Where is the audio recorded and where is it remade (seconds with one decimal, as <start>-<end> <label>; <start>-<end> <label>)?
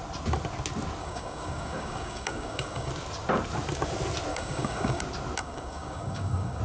0.0-1.0 recorded; 1.0-2.9 remade; 2.9-4.3 recorded; 4.3-5.0 remade; 5.0-5.4 recorded; 5.4-6.6 remade